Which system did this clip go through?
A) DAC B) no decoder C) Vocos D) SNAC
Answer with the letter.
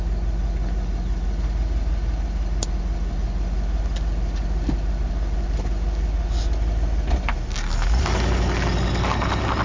B